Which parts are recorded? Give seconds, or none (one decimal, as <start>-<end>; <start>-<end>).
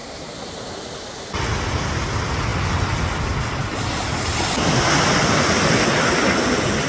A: 0.0-6.9